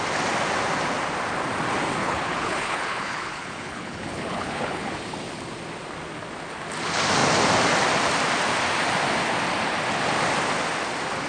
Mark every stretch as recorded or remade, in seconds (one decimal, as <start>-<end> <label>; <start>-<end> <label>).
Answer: 0.0-2.0 recorded; 2.0-4.9 remade; 4.9-11.3 recorded